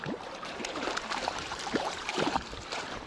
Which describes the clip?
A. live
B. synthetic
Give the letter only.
B